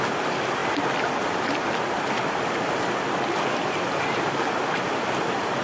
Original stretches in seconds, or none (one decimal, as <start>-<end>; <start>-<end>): 0.0-5.6